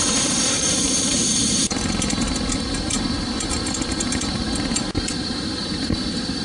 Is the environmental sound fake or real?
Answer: fake